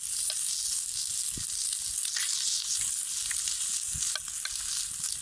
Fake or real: real